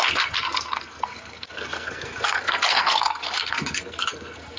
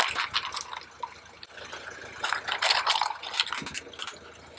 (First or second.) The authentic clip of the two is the second